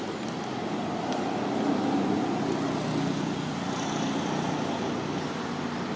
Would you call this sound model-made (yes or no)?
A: no